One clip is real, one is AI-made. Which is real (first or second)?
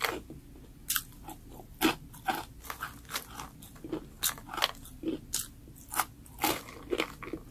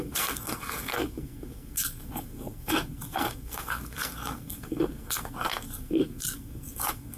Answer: first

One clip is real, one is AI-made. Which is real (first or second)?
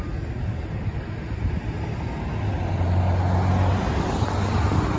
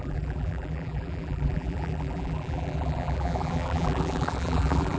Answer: first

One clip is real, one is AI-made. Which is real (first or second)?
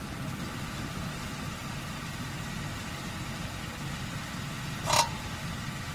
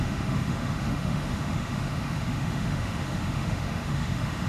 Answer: first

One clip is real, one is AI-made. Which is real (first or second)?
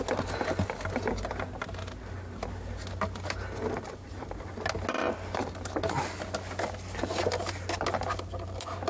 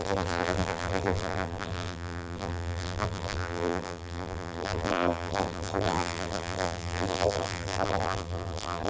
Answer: first